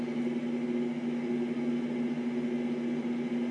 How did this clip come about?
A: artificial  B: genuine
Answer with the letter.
B